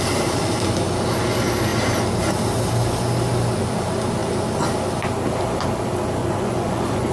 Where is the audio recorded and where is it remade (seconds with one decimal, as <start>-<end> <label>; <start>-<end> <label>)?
0.0-6.2 recorded; 6.2-7.1 remade